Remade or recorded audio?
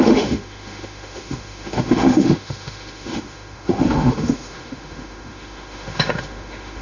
remade